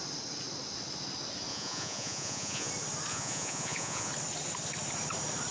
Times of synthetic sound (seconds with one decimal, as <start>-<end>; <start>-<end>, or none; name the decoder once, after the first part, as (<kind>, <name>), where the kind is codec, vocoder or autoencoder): 1.5-2.7 (vocoder, Vocos); 3.1-4.1